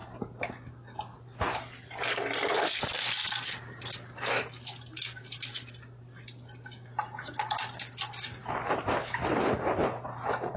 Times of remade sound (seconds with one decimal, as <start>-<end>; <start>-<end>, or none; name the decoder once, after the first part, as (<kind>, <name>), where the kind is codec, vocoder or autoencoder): 8.4-10.6 (vocoder, BigVGAN v2)